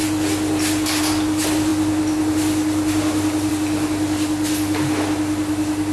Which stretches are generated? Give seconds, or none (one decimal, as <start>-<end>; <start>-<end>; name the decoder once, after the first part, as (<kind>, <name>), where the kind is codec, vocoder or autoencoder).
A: none